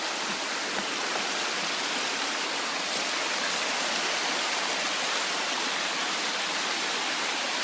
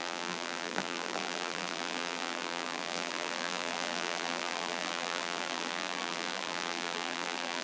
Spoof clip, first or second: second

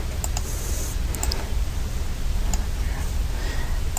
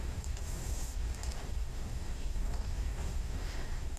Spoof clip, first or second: second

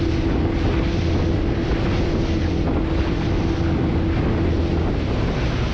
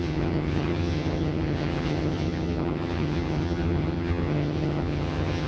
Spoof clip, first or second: second